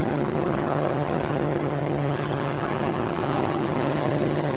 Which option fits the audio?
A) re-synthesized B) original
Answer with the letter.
A